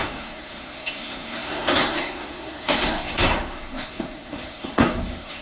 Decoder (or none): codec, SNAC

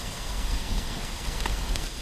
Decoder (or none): codec, SNAC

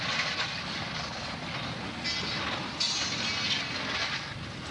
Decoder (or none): none